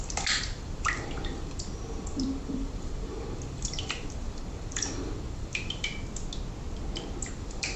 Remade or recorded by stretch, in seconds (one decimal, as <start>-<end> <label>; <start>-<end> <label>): 0.0-5.9 remade; 5.9-7.3 recorded; 7.3-7.8 remade